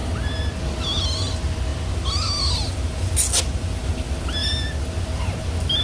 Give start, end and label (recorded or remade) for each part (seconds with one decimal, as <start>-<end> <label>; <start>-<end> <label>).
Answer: 0.0-5.8 recorded